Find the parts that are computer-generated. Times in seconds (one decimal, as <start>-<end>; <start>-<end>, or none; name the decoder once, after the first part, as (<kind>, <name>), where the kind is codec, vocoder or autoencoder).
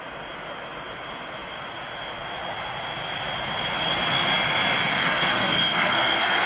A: 4.9-6.5 (codec, SNAC)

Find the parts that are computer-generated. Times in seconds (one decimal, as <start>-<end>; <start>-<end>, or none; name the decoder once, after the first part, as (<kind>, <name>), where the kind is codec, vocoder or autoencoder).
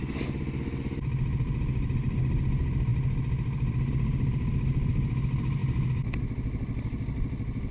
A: none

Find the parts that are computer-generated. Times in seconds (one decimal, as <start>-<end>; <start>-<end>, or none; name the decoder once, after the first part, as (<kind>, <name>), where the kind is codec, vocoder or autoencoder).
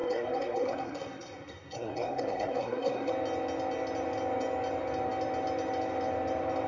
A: 0.0-3.1 (codec, SNAC)